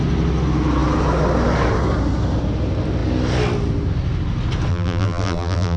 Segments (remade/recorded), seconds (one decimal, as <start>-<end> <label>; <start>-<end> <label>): 0.0-4.7 recorded; 4.7-5.8 remade